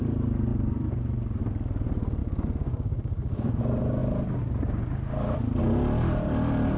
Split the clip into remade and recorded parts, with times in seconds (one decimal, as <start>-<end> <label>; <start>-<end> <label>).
0.0-2.2 recorded; 2.2-3.6 remade; 3.6-6.8 recorded